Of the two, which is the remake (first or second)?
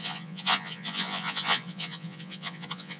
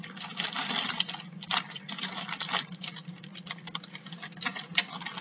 first